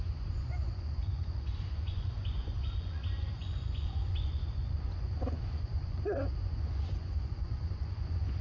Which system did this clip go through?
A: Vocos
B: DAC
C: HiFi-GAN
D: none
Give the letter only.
A